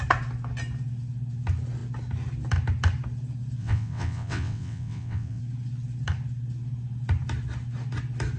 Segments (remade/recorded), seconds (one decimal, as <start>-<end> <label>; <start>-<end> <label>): 0.0-3.6 recorded; 3.6-5.4 remade; 5.4-8.4 recorded